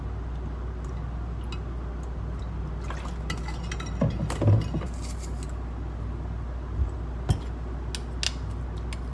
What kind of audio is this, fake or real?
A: real